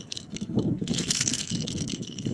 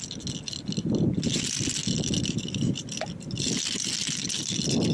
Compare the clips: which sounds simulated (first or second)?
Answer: first